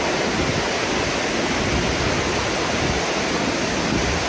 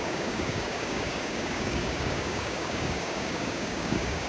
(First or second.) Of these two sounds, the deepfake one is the second